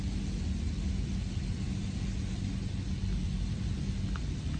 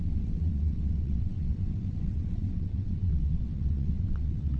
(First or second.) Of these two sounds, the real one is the first